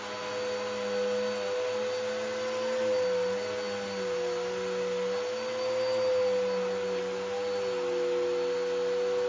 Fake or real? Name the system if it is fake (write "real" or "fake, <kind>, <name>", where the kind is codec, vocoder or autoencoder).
real